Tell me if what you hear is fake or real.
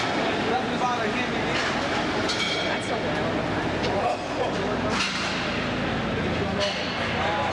real